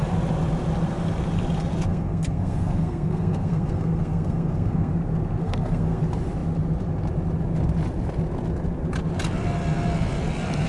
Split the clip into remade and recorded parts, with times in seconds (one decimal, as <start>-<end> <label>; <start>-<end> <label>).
0.0-1.9 recorded; 1.9-4.9 remade; 4.9-5.4 recorded; 5.4-6.0 remade; 6.0-10.7 recorded